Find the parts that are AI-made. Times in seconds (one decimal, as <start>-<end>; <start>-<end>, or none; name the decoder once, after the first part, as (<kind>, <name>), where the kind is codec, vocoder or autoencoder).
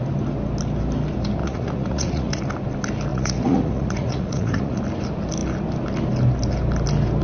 1.4-2.4 (vocoder, Vocos); 3.1-4.8